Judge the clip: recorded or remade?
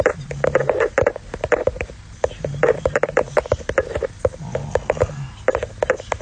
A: recorded